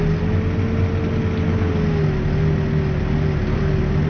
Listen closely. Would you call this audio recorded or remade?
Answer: recorded